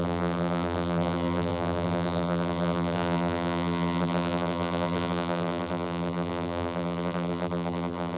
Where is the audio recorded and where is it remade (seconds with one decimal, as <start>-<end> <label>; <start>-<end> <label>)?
0.0-8.2 remade